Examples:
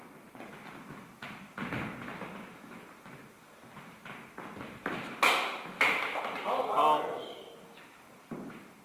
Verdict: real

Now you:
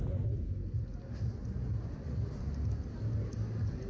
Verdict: real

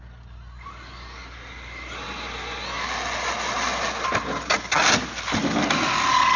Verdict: real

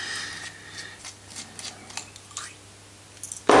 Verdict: real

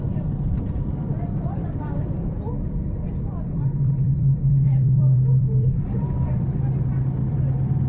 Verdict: fake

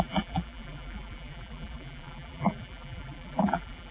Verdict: fake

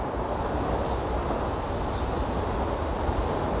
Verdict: real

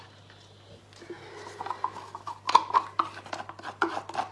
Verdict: real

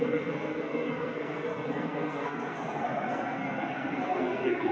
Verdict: fake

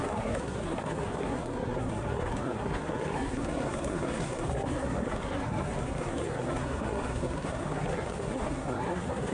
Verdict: fake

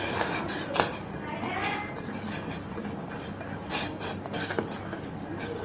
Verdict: real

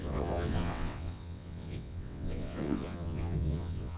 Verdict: fake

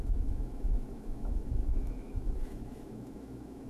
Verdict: fake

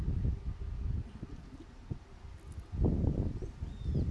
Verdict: real